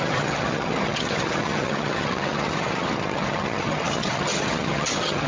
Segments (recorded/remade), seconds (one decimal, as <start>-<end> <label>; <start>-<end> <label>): 0.0-5.3 remade